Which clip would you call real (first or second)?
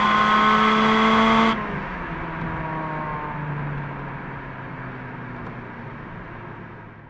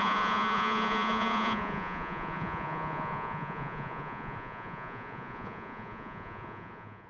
first